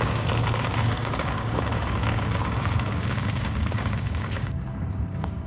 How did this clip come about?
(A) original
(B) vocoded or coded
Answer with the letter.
B